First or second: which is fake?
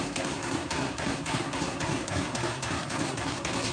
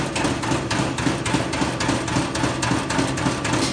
first